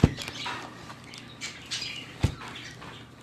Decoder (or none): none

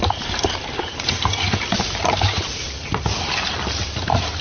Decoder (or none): vocoder, BigVGAN v2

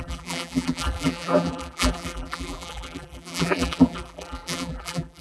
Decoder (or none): vocoder, BigVGAN v2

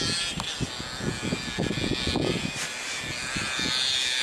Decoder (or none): none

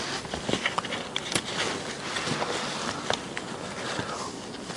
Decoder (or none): none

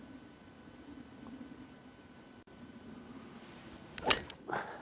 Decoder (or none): none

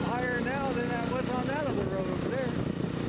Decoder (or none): none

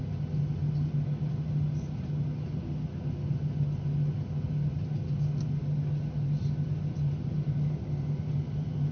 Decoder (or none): none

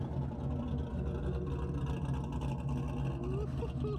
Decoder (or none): none